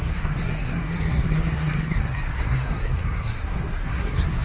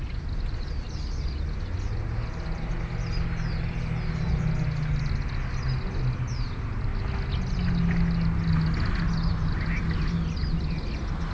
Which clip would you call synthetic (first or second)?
first